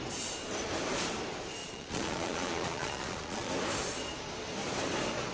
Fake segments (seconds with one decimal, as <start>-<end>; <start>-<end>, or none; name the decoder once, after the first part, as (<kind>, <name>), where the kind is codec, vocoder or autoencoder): 1.6-3.5 (vocoder, Vocos)